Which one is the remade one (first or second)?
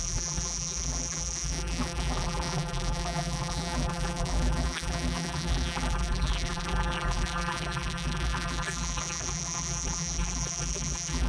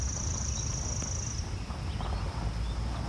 first